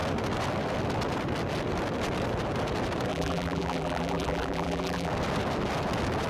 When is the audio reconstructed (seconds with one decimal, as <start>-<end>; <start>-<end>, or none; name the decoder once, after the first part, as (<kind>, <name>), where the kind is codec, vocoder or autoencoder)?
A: 3.1-5.1 (vocoder, BigVGAN v2)